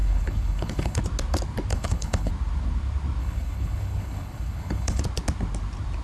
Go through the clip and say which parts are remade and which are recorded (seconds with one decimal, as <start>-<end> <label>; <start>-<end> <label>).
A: 0.0-1.0 remade; 1.0-1.7 recorded; 1.7-2.3 remade; 2.3-3.2 recorded; 3.2-5.0 remade; 5.0-6.0 recorded